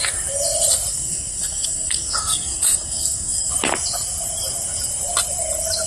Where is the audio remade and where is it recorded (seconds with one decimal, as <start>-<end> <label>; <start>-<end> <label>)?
0.0-0.9 recorded; 0.9-3.5 remade; 3.5-5.9 recorded